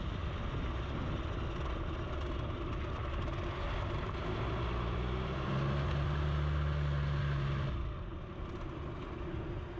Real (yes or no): yes